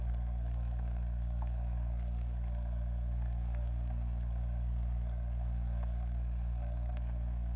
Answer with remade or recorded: remade